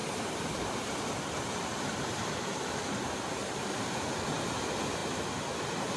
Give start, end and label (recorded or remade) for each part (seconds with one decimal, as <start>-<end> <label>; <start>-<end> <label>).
0.0-2.8 remade; 2.8-3.4 recorded; 3.4-4.1 remade; 4.1-6.0 recorded